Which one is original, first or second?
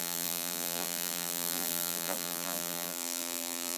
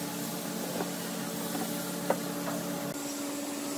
second